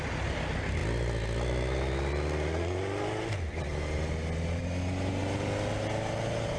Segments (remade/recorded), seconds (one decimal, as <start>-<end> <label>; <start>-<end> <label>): 0.0-6.6 recorded

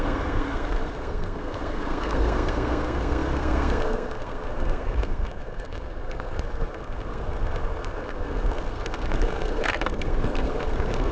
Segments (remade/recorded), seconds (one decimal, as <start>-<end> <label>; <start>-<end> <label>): 0.0-11.1 remade

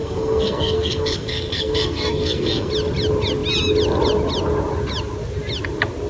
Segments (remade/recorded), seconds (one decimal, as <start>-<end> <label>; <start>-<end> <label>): 0.0-2.7 remade; 2.7-6.1 recorded

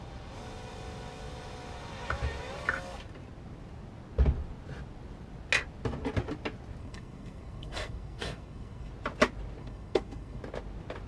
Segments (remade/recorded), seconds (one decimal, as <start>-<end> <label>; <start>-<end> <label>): 0.0-6.8 recorded; 6.8-8.9 remade; 8.9-9.6 recorded; 9.6-10.4 remade; 10.4-11.1 recorded

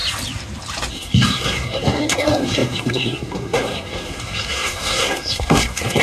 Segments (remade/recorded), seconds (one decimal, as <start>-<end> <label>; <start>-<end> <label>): 0.0-0.9 recorded; 0.9-6.0 remade